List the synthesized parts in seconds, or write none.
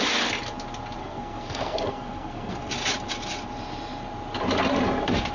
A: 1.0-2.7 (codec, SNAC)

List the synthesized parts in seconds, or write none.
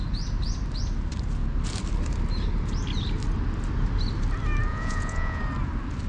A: 4.7-5.4 (vocoder, Vocos)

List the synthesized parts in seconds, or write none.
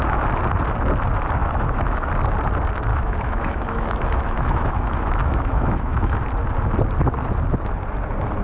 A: 1.4-2.1 (autoencoder, DAC-VAE); 2.9-6.2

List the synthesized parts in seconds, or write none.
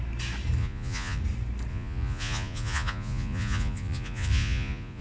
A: 0.6-1.2 (vocoder, Vocos); 1.7-5.0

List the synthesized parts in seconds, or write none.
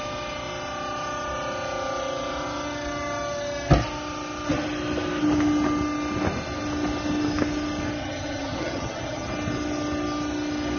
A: 8.0-9.3 (vocoder, HiFi-GAN)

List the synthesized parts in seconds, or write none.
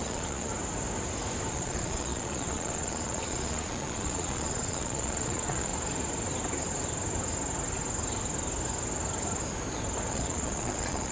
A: 0.0-0.5 (vocoder, Vocos); 1.5-5.7; 10.1-11.1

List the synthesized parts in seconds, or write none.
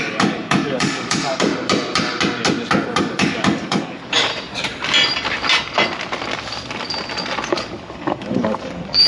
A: 0.0-1.5 (codec, DAC); 3.0-4.3; 7.5-9.1